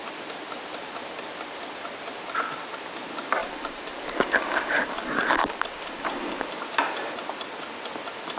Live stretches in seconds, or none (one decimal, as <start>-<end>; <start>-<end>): 0.0-3.4; 6.5-8.4